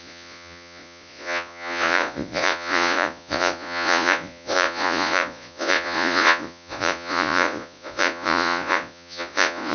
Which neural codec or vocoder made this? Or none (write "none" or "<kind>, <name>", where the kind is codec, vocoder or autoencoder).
vocoder, Vocos